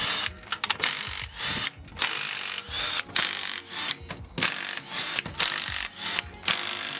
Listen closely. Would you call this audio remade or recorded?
recorded